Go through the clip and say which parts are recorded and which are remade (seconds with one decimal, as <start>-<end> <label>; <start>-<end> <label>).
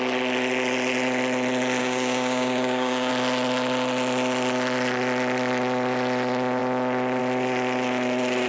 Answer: 0.0-1.8 recorded; 1.8-3.1 remade; 3.1-8.5 recorded